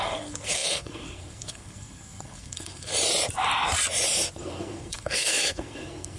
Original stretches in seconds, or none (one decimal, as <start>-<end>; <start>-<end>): 2.9-4.4